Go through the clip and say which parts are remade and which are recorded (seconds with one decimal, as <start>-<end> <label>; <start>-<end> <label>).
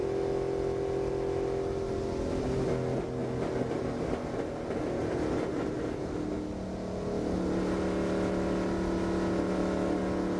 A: 0.0-10.4 recorded